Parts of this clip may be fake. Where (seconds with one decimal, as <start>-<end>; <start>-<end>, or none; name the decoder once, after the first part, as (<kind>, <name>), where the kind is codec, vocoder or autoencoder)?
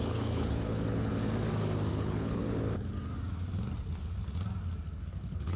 0.0-1.1 (codec, HILCodec); 1.9-2.4; 5.0-5.6